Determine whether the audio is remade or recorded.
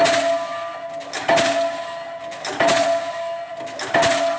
recorded